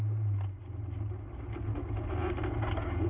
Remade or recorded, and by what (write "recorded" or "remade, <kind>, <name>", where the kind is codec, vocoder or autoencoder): recorded